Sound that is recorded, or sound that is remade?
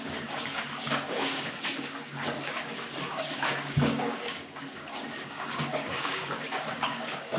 remade